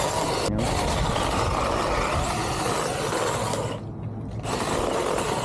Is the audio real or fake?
real